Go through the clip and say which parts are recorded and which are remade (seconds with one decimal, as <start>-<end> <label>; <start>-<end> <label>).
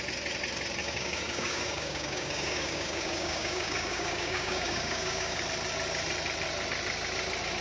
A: 0.0-0.8 recorded; 0.8-5.4 remade; 5.4-7.6 recorded